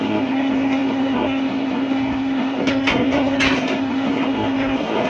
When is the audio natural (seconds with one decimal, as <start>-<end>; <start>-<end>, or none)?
none